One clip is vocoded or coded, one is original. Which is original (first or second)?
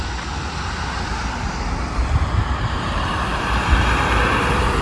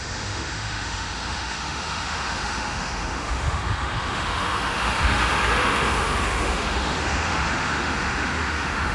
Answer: first